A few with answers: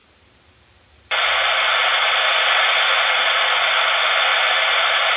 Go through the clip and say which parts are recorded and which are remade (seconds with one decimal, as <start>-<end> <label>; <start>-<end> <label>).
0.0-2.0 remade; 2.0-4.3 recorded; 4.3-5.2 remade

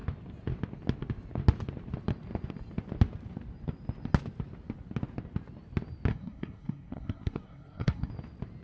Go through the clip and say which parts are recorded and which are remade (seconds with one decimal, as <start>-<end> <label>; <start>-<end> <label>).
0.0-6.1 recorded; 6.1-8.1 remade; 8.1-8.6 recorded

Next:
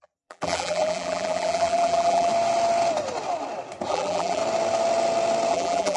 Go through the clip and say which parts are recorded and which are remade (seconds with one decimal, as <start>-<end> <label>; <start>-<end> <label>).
0.0-2.3 remade; 2.3-3.9 recorded; 3.9-4.4 remade; 4.4-5.5 recorded; 5.5-6.0 remade

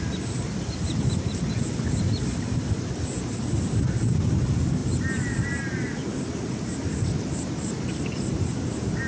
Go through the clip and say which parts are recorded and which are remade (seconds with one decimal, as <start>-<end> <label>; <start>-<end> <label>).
0.0-9.1 recorded

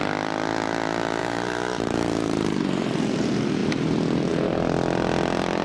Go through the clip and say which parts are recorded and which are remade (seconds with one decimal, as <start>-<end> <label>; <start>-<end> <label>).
0.0-1.2 recorded; 1.2-2.6 remade; 2.6-5.6 recorded

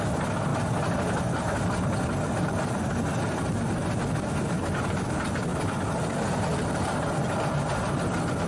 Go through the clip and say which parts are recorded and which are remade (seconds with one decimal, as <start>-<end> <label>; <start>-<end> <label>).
0.0-8.5 recorded

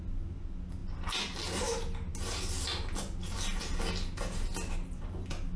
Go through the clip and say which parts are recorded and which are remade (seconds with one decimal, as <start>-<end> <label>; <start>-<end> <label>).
0.0-5.6 recorded

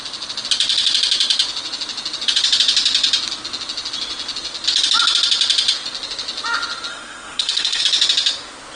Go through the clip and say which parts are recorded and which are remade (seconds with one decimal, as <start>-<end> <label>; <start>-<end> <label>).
0.0-6.9 recorded; 6.9-7.8 remade; 7.8-8.8 recorded